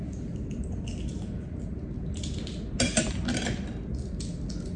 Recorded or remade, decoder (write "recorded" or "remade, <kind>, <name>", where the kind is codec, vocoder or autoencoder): recorded